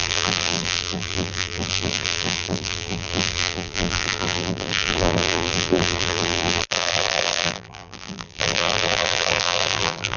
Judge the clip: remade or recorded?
remade